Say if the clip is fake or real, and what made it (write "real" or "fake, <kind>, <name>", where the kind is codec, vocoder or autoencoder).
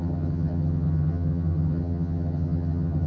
fake, vocoder, HiFi-GAN